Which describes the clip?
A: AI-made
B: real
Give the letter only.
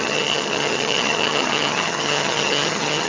A